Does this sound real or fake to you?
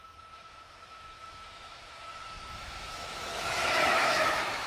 fake